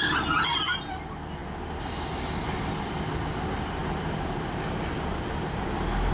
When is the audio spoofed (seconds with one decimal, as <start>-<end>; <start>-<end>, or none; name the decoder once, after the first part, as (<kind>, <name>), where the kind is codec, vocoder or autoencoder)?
none